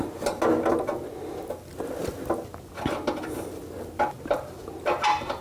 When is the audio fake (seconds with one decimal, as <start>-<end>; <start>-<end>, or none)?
none